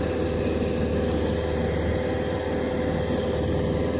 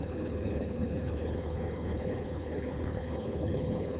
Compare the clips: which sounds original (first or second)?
first